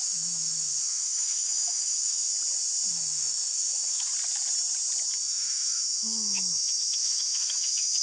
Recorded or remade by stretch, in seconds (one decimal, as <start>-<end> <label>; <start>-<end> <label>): 0.0-2.3 remade; 2.3-2.9 recorded; 2.9-4.1 remade; 4.1-5.2 recorded; 5.2-8.0 remade